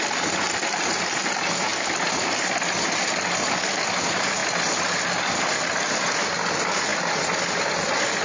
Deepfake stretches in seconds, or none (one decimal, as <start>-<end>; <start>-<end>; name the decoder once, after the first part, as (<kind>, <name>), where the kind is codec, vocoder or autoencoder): none